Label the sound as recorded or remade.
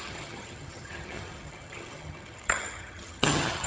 remade